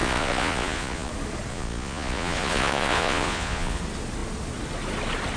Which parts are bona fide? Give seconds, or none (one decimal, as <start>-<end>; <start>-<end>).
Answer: 1.1-1.5; 3.8-5.4